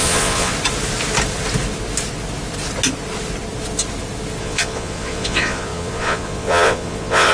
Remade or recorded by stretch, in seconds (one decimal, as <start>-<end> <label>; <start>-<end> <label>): 0.0-0.5 remade; 0.5-4.4 recorded; 4.4-7.3 remade